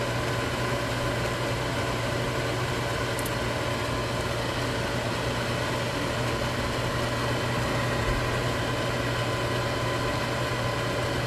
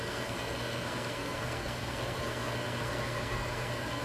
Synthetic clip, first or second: second